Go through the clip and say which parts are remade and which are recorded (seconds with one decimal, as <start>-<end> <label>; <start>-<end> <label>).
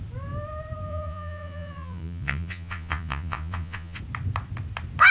0.0-0.9 recorded; 0.9-4.0 remade; 4.0-5.1 recorded